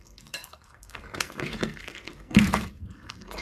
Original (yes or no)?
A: no